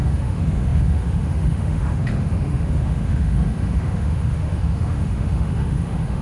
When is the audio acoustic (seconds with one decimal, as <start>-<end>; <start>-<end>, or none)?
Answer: none